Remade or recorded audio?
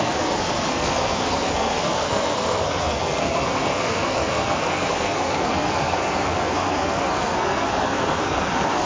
remade